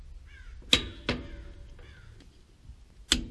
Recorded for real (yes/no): yes